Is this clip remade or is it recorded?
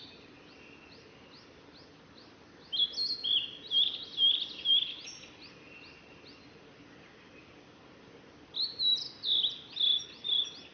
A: recorded